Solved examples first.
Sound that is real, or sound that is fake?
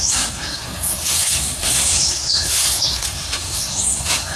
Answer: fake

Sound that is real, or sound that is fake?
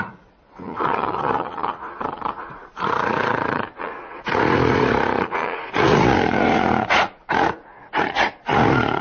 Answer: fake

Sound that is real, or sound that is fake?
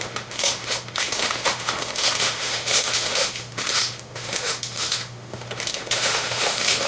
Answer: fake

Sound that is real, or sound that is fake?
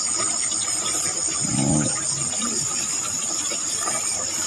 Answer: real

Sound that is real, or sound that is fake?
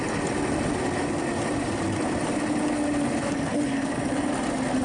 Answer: real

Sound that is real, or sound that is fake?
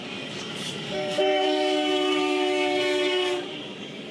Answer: fake